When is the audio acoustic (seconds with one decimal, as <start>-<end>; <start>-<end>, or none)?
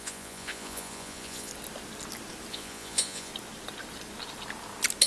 1.5-2.5; 3.3-5.1